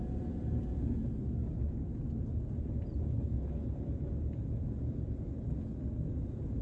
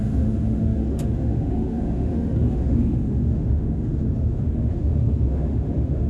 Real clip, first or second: first